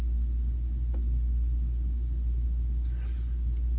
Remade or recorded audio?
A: recorded